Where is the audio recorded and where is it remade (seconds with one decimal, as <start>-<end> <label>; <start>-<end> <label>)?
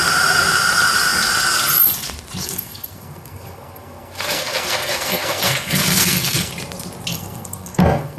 0.0-2.4 recorded; 2.4-6.5 remade; 6.5-7.1 recorded; 7.1-8.2 remade